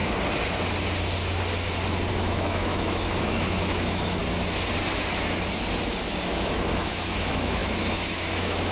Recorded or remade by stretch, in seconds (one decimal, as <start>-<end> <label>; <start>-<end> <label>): 0.0-2.1 recorded; 2.1-4.2 remade; 4.2-6.3 recorded; 6.3-8.7 remade